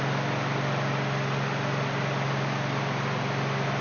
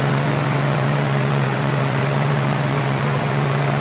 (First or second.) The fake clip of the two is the second